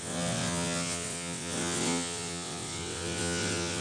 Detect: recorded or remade remade